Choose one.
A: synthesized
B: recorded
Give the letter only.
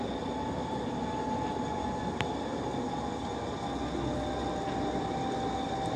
B